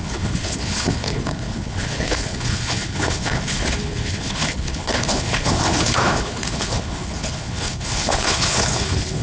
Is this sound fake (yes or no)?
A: yes